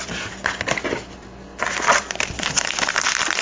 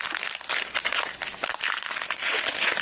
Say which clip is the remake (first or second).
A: first